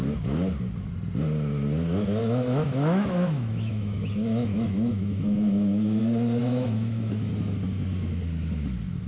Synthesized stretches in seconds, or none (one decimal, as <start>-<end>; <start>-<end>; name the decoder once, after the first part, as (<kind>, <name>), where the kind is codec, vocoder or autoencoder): 2.2-6.0 (autoencoder, DAC-VAE); 6.4-7.3